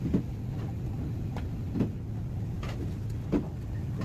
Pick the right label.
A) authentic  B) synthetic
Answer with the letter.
A